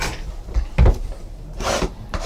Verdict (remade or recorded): recorded